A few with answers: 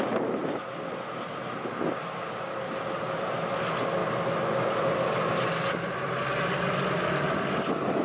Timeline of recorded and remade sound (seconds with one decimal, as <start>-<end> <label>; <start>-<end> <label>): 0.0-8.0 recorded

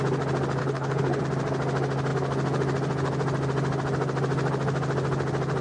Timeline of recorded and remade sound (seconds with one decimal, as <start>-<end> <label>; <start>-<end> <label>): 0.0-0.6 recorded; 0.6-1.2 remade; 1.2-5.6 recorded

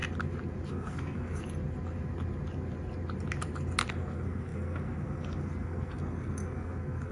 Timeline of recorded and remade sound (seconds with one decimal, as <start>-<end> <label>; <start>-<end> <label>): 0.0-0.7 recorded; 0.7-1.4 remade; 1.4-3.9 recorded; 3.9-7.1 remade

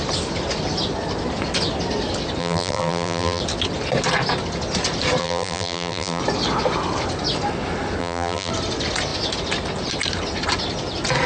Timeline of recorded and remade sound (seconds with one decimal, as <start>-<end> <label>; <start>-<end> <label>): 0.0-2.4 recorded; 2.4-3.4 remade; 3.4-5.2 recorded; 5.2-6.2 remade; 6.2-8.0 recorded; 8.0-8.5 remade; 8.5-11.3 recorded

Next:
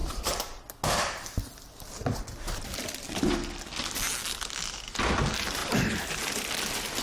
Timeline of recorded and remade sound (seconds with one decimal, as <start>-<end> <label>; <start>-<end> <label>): 0.0-0.6 remade; 0.6-5.6 recorded; 5.6-6.2 remade; 6.2-7.0 recorded

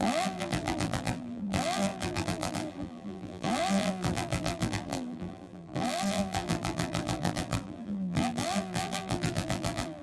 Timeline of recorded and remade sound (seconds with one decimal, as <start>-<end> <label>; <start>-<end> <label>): 0.0-10.0 remade